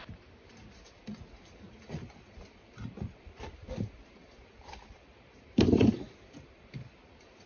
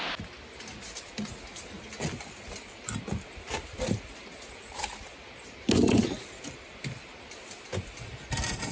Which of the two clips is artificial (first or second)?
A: first